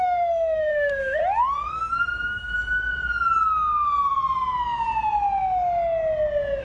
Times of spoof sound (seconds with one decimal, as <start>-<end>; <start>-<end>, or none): 0.0-1.2; 1.7-2.5